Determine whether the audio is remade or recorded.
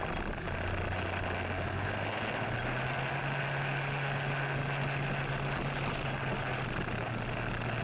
recorded